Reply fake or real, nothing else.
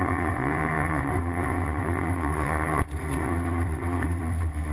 fake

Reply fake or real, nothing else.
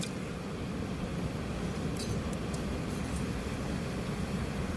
real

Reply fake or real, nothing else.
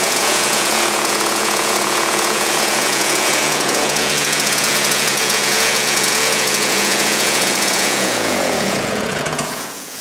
fake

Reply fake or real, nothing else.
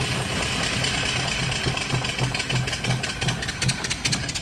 real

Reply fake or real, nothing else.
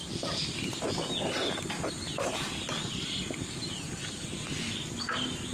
real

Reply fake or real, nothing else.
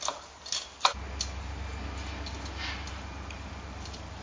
real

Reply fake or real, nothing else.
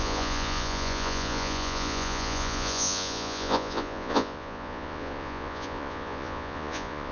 fake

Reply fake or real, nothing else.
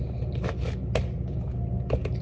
real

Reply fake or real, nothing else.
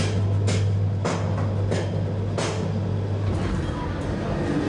real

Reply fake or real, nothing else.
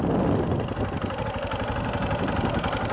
real